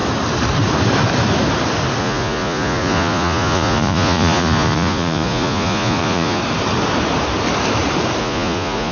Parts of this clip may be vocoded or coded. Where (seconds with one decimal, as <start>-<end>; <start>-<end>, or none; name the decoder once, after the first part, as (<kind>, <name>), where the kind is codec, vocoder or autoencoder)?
2.0-6.4 (vocoder, Vocos); 8.2-8.9